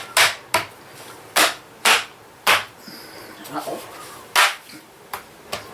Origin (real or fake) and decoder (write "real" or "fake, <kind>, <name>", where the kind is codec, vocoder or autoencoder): real